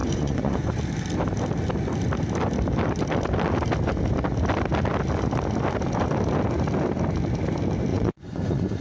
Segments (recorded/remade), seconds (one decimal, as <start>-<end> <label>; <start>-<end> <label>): 0.0-0.8 remade; 0.8-7.9 recorded; 7.9-8.8 remade